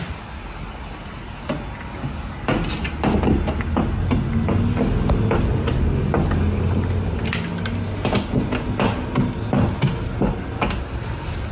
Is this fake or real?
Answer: real